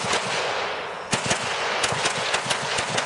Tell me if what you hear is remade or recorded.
remade